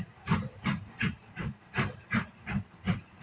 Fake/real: fake